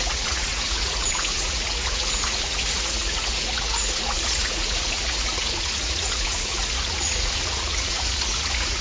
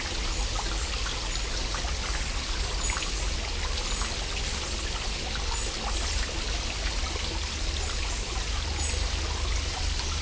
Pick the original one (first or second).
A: second